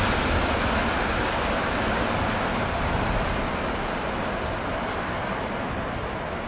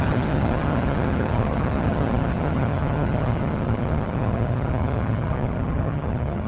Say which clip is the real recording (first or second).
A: first